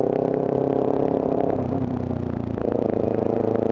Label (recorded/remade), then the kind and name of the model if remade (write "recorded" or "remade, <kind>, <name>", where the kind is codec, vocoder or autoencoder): remade, vocoder, BigVGAN v2